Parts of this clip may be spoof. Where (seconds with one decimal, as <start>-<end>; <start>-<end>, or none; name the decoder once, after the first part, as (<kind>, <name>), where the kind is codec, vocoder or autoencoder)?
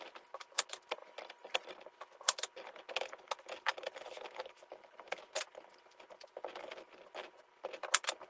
none